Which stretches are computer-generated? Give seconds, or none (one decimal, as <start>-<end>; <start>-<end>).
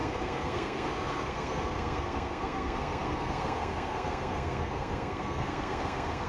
0.0-6.3